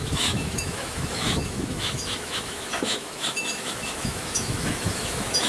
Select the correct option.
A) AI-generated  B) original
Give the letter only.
A